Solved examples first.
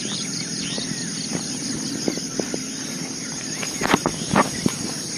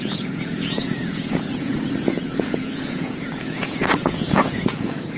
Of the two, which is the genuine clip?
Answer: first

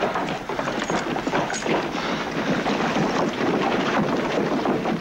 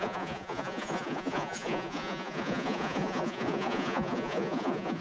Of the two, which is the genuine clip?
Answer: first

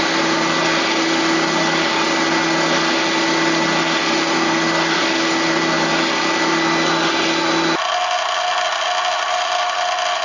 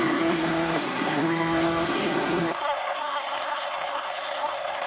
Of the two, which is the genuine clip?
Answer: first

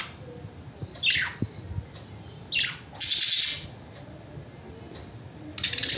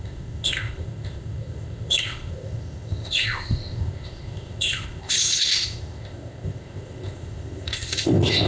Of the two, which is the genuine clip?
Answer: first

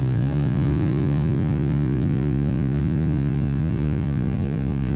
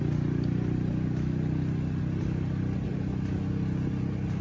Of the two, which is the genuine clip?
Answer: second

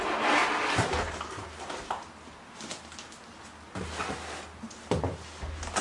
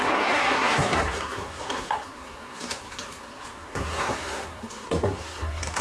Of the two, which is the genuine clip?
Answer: first